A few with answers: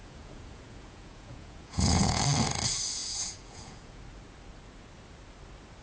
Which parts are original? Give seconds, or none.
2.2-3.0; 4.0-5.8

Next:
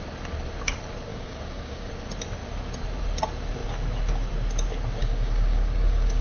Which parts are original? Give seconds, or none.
0.0-1.1; 1.9-5.0

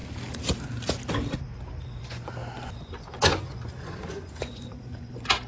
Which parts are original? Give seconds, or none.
0.0-2.0